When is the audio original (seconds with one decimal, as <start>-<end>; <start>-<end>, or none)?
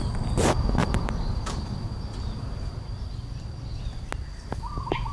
0.0-0.8; 2.9-5.1